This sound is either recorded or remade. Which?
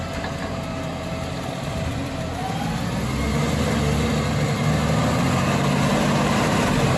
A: recorded